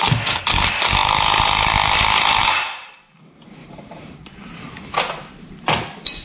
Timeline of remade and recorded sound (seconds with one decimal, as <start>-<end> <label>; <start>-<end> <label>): 0.0-2.4 recorded; 2.4-2.9 remade; 2.9-3.6 recorded; 3.6-5.7 remade; 5.7-6.2 recorded